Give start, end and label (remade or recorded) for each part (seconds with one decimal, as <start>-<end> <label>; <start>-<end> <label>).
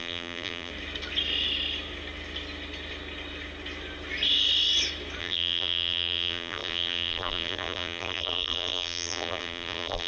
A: 0.0-0.7 remade; 0.7-5.2 recorded; 5.2-10.1 remade